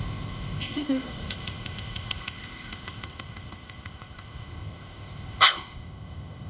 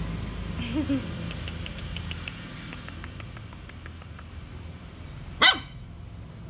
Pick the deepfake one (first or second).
first